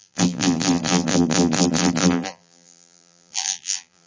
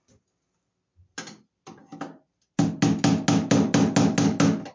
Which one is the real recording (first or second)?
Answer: second